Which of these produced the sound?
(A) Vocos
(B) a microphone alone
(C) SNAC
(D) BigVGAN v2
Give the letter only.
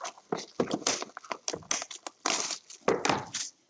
B